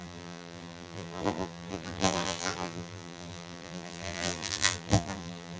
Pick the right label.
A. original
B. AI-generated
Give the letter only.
B